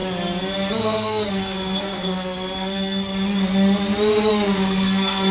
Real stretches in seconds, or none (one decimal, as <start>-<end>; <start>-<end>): 0.0-0.7; 3.1-4.3